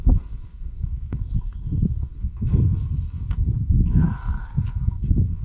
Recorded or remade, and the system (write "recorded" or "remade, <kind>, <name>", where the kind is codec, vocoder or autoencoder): remade, codec, SNAC